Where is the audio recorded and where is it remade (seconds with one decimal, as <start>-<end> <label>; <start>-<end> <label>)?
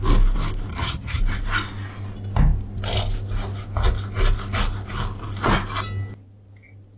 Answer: 0.0-0.7 recorded; 0.7-1.2 remade; 1.2-7.0 recorded